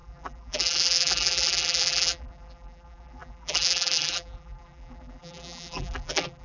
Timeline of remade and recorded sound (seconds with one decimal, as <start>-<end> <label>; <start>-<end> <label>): 0.0-6.4 remade